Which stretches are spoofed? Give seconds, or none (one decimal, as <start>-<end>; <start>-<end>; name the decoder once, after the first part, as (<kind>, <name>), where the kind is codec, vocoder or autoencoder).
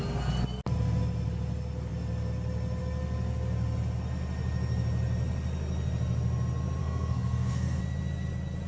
6.8-7.8 (codec, SNAC)